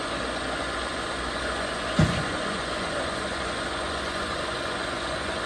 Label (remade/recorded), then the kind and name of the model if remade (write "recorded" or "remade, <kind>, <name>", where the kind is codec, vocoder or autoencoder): remade, vocoder, Vocos